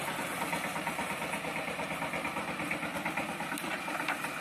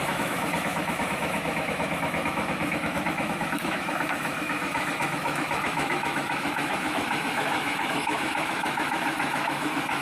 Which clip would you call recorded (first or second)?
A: first